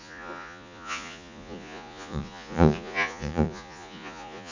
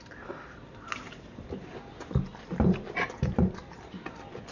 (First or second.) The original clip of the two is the second